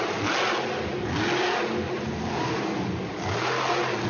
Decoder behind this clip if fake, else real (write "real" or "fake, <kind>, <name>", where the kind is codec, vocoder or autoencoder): real